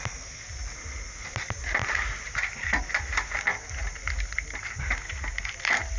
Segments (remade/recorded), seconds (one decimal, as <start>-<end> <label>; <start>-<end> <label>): 0.0-6.0 recorded